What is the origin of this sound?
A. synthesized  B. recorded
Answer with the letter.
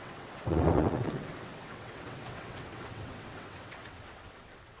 A